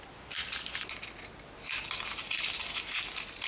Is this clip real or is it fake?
real